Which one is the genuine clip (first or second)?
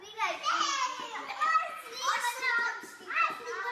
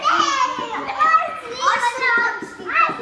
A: second